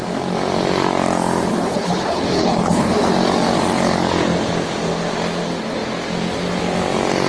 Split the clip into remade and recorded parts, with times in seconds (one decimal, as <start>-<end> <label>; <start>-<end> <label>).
0.0-1.5 recorded; 1.5-3.1 remade; 3.1-7.3 recorded